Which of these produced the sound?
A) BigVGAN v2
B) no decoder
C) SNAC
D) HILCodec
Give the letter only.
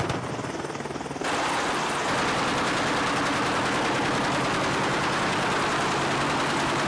B